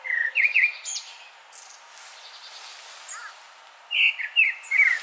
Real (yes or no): yes